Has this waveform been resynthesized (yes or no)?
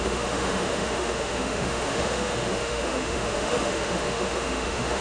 yes